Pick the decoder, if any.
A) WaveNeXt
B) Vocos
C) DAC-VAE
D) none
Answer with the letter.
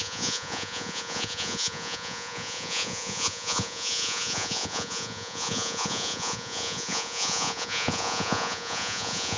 B